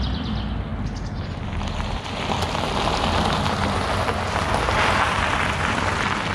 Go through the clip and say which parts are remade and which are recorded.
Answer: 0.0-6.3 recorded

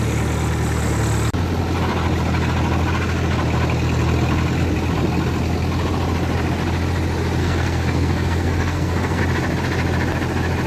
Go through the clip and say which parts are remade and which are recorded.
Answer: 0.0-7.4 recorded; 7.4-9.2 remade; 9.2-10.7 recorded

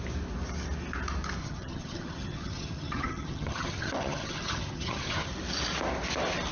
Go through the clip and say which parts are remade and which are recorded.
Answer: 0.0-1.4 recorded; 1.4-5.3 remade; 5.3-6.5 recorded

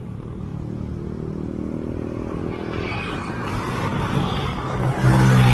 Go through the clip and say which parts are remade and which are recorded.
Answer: 0.0-5.5 recorded

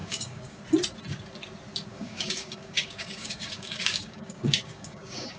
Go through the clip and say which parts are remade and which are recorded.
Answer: 0.0-0.6 remade; 0.6-1.9 recorded; 1.9-5.4 remade

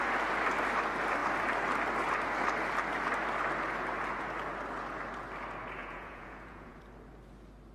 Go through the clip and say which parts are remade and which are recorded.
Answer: 0.0-5.8 recorded; 5.8-6.8 remade; 6.8-7.7 recorded

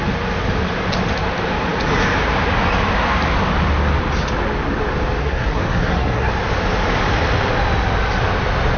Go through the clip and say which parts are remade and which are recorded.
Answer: 0.0-5.2 recorded; 5.2-6.3 remade; 6.3-8.8 recorded